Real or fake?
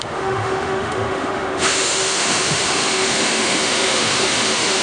fake